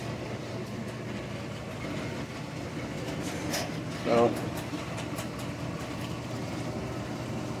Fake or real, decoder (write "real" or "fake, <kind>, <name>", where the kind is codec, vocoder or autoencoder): real